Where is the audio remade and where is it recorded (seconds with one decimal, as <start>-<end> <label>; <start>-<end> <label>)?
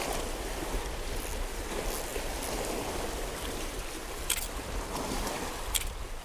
0.0-6.2 recorded